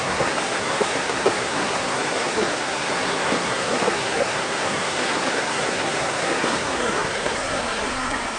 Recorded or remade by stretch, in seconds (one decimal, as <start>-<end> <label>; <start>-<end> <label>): 0.0-8.4 remade